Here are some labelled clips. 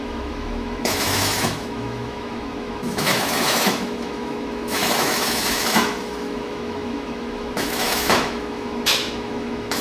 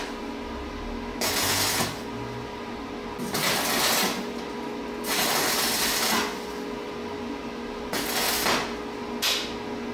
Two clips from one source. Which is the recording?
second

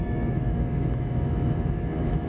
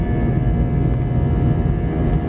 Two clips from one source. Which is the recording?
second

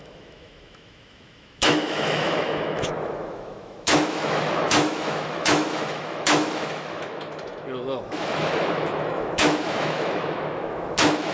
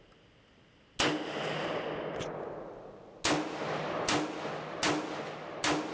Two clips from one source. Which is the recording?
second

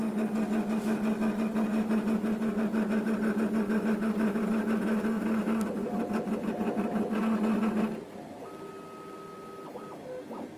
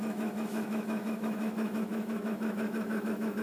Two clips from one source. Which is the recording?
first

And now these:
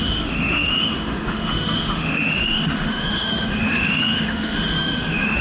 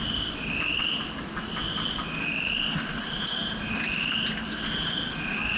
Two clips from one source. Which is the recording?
second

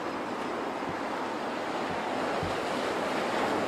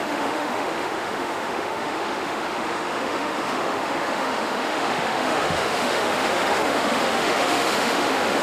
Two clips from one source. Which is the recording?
first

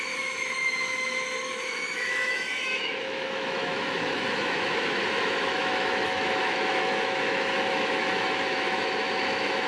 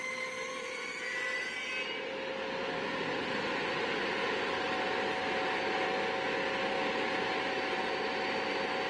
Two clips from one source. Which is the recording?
second